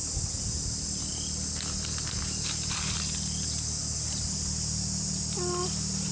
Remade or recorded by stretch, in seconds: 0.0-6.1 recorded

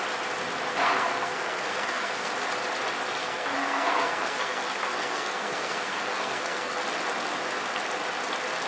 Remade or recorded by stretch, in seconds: 0.0-0.7 recorded; 0.7-2.3 remade; 2.3-3.2 recorded; 3.2-6.7 remade; 6.7-8.7 recorded

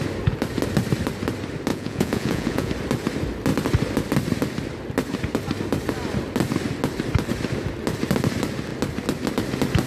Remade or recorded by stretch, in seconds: 0.0-1.7 recorded; 1.7-2.7 remade; 2.7-9.9 recorded

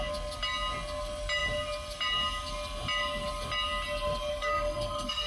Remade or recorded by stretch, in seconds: 0.0-4.3 recorded; 4.3-5.3 remade

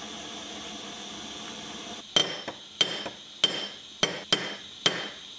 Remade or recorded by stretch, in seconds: 0.0-5.4 recorded

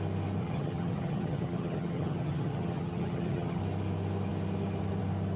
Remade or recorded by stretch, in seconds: 0.0-0.4 recorded; 0.4-3.6 remade; 3.6-5.4 recorded